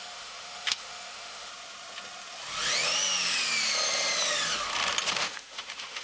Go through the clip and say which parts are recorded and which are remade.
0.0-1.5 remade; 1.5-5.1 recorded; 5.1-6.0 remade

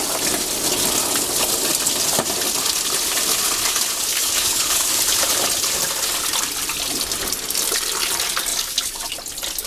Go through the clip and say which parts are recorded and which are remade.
0.0-4.1 recorded; 4.1-5.0 remade; 5.0-8.5 recorded; 8.5-9.1 remade; 9.1-9.7 recorded

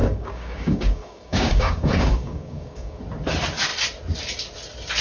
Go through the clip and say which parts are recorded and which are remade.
0.0-3.0 remade; 3.0-5.0 recorded